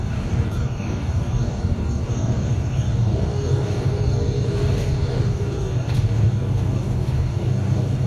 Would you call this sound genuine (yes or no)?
no